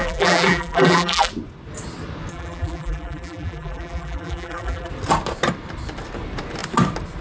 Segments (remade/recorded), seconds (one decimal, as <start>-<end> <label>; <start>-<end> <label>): 0.0-1.3 remade; 1.3-2.3 recorded; 2.3-4.9 remade; 4.9-7.2 recorded

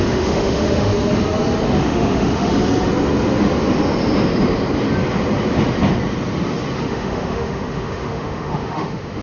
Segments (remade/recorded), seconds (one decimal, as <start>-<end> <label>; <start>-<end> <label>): 0.0-0.9 remade; 0.9-1.6 recorded; 1.6-2.5 remade; 2.5-6.8 recorded; 6.8-9.2 remade